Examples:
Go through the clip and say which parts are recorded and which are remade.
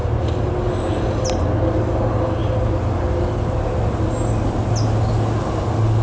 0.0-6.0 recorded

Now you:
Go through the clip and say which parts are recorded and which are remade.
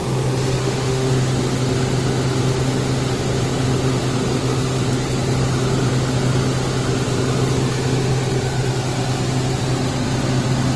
0.0-0.6 recorded; 0.6-1.1 remade; 1.1-10.8 recorded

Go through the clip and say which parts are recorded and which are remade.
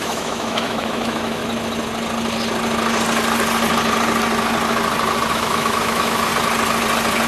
0.0-1.4 remade; 1.4-5.3 recorded; 5.3-6.3 remade; 6.3-7.3 recorded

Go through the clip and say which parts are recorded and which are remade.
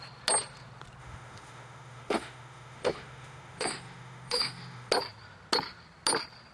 0.0-1.0 recorded; 1.0-4.9 remade; 4.9-6.5 recorded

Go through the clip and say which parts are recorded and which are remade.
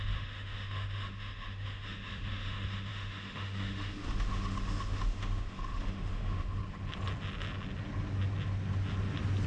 0.0-6.6 remade; 6.6-9.5 recorded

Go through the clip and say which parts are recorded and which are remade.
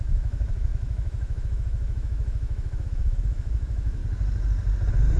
0.0-4.0 remade; 4.0-5.2 recorded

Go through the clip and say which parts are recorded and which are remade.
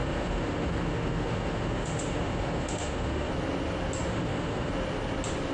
0.0-3.3 remade; 3.3-4.1 recorded; 4.1-4.7 remade; 4.7-5.5 recorded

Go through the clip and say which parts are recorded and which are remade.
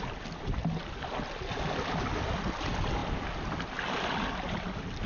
0.0-5.1 recorded